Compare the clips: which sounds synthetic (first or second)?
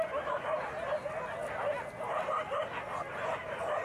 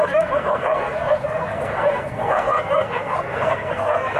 second